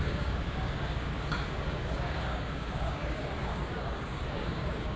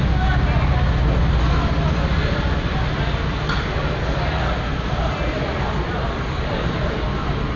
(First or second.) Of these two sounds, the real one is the second